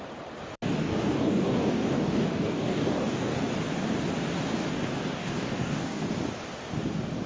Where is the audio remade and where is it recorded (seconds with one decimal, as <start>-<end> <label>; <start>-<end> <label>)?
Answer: 0.0-0.8 recorded; 0.8-3.4 remade; 3.4-4.7 recorded; 4.7-6.1 remade; 6.1-7.3 recorded